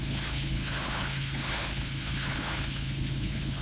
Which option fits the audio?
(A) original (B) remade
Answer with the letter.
B